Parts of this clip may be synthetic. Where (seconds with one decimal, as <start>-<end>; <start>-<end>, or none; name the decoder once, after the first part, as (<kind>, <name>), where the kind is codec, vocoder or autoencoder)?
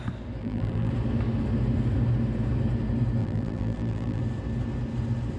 0.4-0.9 (vocoder, BigVGAN v2); 3.2-4.2